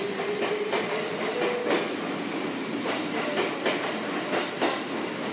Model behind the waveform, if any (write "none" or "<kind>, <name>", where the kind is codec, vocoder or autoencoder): none